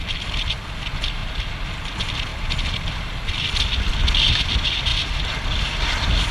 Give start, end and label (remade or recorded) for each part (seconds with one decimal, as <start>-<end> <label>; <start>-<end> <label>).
0.0-2.3 recorded; 2.3-3.9 remade; 3.9-4.9 recorded; 4.9-5.7 remade; 5.7-6.3 recorded